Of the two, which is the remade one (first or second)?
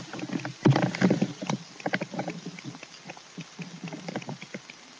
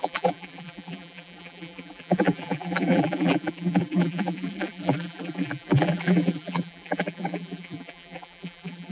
second